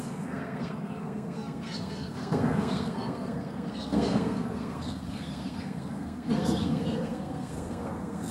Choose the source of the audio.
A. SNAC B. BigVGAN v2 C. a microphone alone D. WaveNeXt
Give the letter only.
A